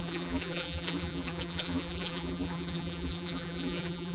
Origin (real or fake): fake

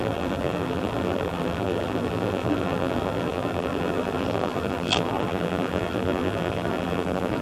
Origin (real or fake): fake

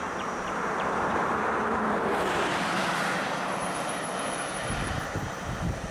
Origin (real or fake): fake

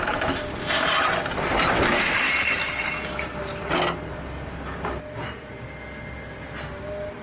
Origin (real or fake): real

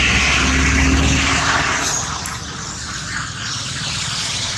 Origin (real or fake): real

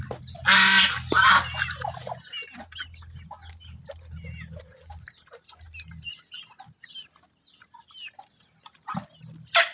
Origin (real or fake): real